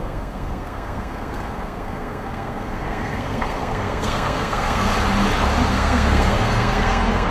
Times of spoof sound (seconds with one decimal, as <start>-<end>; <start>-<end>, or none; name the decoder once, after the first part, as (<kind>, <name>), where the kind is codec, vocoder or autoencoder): 0.0-4.9 (codec, SNAC); 5.7-7.3